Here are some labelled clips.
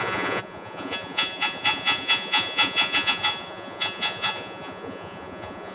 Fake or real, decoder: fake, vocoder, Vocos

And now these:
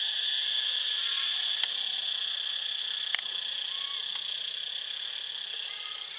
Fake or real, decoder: real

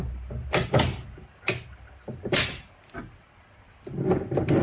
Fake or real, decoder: real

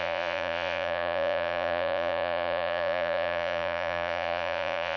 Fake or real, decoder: fake, vocoder, Vocos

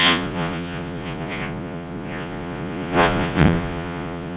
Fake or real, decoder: fake, vocoder, Vocos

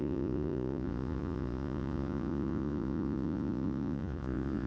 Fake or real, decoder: fake, vocoder, Vocos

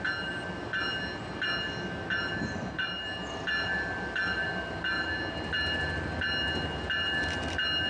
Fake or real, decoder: real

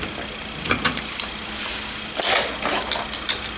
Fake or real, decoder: real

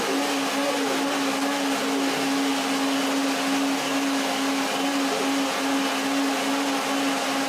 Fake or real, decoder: real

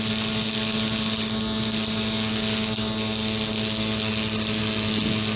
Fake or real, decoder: real